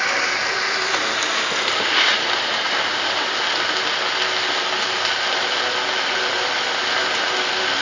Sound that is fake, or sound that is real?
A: real